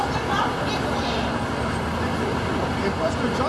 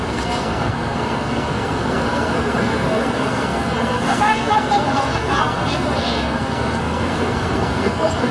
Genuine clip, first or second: first